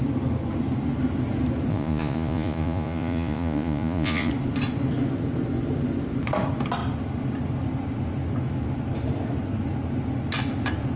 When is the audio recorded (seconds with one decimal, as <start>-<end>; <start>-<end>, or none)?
0.0-1.7; 4.3-11.0